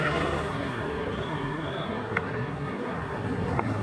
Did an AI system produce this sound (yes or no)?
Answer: yes